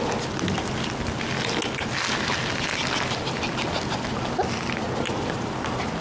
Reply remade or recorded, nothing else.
recorded